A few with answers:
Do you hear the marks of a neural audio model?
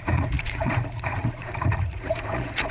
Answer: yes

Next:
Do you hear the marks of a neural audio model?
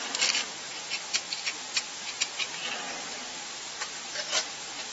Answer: no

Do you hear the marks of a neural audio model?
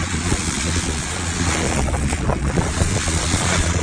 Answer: yes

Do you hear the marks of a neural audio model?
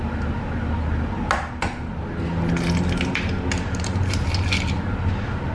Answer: no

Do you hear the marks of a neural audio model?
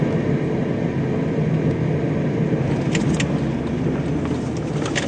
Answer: no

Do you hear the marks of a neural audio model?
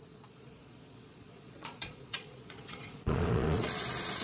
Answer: yes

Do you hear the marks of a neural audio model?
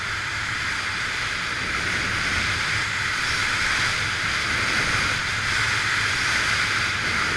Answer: no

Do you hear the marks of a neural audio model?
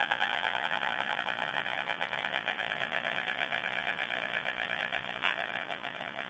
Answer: yes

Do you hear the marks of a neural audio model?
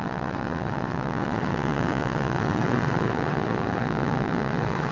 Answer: yes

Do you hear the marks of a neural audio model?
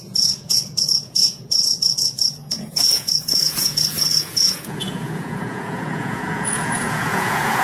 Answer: yes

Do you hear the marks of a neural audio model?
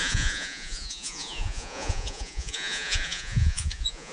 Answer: yes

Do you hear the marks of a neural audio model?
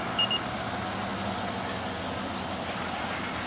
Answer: no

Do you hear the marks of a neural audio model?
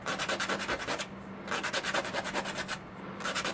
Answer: no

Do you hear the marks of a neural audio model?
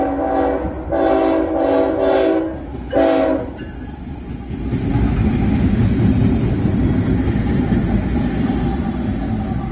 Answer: no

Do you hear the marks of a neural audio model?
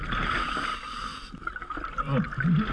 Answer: no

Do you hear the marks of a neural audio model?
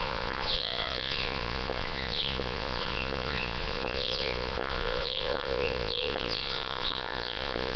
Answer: yes